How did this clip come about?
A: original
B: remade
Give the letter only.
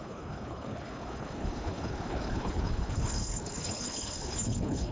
B